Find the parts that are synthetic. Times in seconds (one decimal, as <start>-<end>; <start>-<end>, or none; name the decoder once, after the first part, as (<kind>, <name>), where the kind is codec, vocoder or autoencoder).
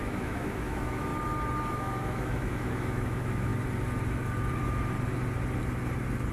0.0-1.1 (autoencoder, DAC-VAE); 1.7-3.5